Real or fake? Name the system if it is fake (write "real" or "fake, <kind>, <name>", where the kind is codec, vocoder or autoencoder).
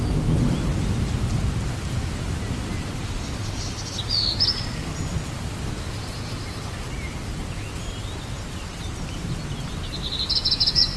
real